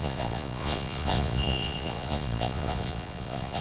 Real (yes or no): no